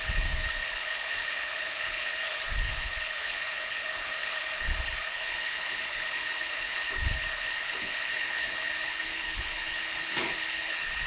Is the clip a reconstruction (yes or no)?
yes